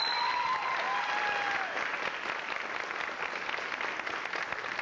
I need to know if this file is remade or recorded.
recorded